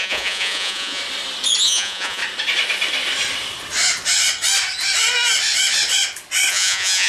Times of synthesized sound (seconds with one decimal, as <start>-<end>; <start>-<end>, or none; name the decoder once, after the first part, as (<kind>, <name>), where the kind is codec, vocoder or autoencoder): 0.0-1.0 (vocoder, Vocos); 1.6-2.2; 6.5-7.1

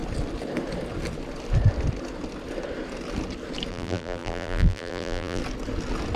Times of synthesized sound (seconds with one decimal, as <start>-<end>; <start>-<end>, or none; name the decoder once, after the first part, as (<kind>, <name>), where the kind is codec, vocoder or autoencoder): 3.7-5.4 (vocoder, BigVGAN v2)

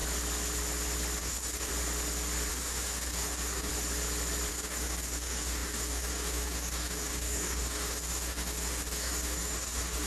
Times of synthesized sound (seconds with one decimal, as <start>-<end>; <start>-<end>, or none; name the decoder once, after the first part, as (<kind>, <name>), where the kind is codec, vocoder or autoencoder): 1.2-1.7 (codec, DAC); 2.5-3.7; 4.5-10.1

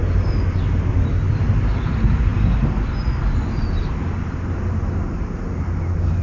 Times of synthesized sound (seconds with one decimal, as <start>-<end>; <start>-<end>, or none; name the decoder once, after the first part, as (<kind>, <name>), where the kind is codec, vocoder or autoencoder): none

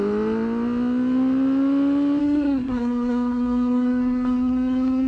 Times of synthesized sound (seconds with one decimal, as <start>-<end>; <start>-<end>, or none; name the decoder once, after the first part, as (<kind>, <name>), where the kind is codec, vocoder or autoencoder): 2.2-5.1 (codec, SNAC)

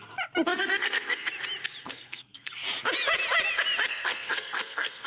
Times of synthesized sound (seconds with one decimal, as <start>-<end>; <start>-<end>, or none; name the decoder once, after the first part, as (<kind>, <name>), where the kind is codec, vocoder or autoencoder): 0.5-1.3 (codec, SNAC); 1.8-2.5; 3.9-5.1

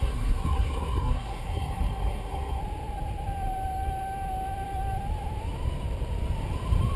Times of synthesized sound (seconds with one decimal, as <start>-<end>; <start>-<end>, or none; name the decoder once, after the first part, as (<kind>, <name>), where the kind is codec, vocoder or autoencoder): 0.0-2.6 (codec, SNAC)

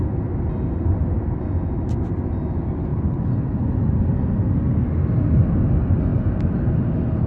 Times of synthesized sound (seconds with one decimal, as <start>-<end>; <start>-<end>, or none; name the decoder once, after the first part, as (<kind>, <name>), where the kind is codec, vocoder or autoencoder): none